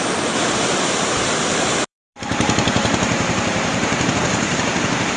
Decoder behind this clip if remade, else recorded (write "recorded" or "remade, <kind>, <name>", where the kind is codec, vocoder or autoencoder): remade, vocoder, BigVGAN v2